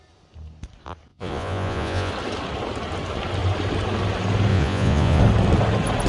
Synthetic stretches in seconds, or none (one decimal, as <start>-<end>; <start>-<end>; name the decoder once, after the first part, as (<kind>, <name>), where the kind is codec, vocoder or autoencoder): 1.1-2.1 (vocoder, Vocos); 4.5-5.2